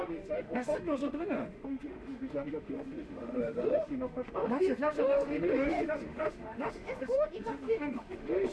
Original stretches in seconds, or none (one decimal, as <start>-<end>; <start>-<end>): none